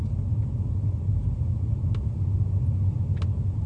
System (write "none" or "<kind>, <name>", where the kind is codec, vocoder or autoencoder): none